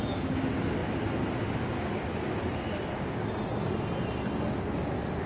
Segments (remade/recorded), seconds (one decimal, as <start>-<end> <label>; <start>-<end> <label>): 0.0-5.3 recorded